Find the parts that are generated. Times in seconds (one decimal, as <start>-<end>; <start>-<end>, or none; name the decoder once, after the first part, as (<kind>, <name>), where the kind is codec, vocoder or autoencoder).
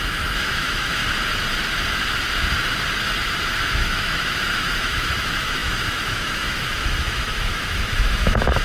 0.0-1.0 (autoencoder, DAC-VAE); 3.2-8.6